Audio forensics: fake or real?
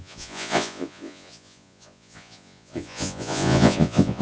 fake